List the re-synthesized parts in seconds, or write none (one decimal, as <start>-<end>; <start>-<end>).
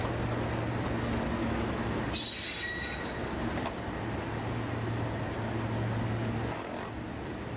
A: 1.4-2.0